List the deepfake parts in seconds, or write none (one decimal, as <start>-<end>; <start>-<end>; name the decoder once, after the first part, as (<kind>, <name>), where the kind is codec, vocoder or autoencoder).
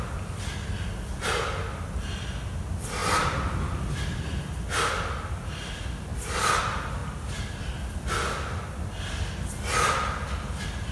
none